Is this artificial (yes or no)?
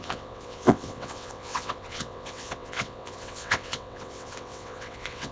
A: yes